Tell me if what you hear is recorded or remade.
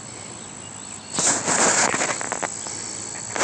recorded